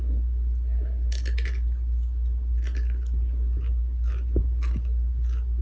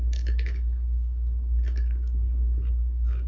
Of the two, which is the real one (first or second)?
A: first